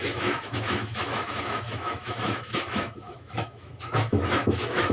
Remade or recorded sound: remade